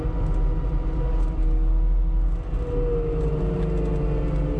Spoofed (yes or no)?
no